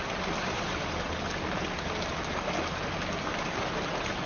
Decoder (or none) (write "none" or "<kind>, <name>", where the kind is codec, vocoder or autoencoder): none